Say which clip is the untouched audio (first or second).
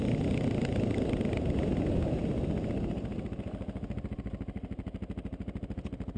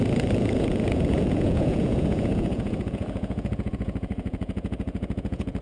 first